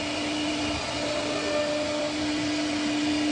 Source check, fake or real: real